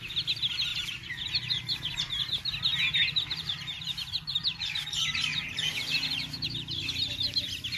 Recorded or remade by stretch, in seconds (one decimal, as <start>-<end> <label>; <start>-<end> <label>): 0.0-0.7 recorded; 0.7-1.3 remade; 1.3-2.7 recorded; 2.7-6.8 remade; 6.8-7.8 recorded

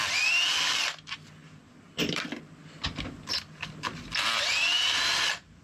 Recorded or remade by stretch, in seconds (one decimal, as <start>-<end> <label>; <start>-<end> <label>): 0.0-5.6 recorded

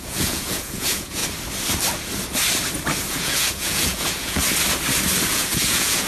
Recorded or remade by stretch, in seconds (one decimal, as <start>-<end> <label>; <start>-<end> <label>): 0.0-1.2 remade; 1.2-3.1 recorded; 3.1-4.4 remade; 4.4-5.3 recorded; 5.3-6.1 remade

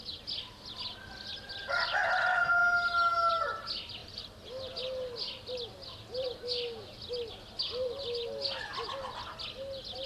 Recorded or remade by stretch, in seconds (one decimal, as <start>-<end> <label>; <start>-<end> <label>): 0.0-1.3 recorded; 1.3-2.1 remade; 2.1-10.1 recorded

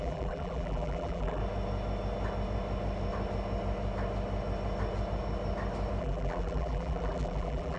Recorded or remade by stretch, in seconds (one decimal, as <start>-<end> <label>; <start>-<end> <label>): 0.0-1.4 remade; 1.4-6.0 recorded; 6.0-7.8 remade